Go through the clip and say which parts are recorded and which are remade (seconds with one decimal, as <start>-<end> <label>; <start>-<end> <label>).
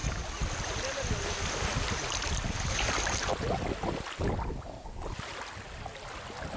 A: 0.0-6.6 recorded